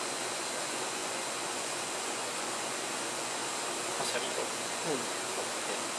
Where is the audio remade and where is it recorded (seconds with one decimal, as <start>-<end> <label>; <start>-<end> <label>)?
0.0-3.4 remade; 3.4-4.0 recorded; 4.0-6.0 remade